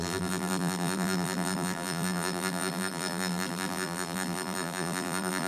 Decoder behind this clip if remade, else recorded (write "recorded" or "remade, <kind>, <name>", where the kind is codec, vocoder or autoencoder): remade, vocoder, BigVGAN v2